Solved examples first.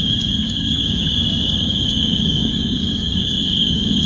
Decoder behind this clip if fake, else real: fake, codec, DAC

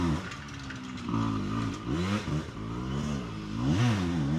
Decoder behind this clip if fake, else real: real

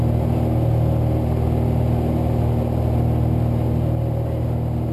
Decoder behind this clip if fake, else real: real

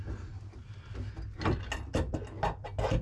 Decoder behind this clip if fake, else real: real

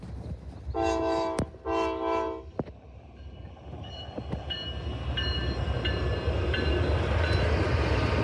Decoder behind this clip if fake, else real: real